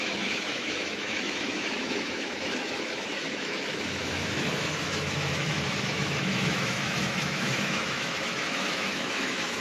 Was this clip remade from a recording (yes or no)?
yes